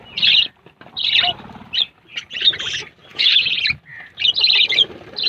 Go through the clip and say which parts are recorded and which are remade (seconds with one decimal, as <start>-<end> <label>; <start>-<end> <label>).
0.0-3.1 recorded; 3.1-3.6 remade; 3.6-5.3 recorded